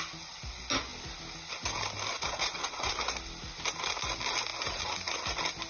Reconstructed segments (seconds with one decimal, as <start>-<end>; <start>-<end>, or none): 2.1-2.9